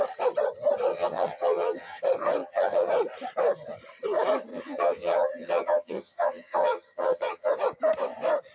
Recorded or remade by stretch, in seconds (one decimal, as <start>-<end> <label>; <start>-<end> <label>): 0.0-0.9 recorded; 0.9-2.0 remade; 2.0-2.4 recorded; 2.4-2.9 remade; 2.9-4.5 recorded; 4.5-7.5 remade; 7.5-8.5 recorded